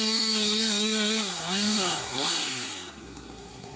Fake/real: fake